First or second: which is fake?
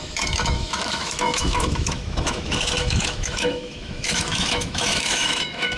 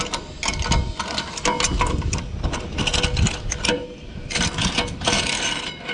first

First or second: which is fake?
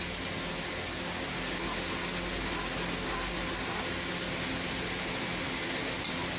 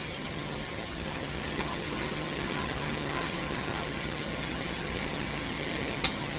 second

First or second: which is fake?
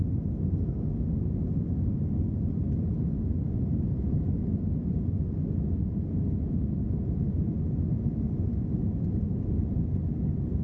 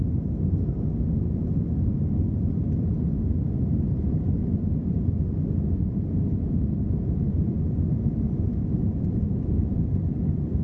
second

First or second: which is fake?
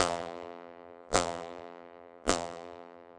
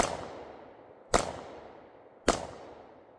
first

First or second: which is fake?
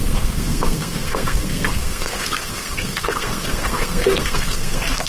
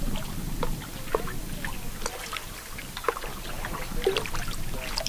first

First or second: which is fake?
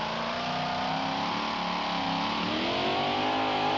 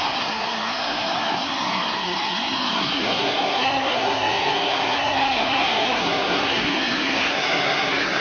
second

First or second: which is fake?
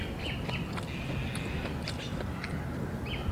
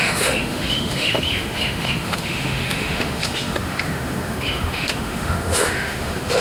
second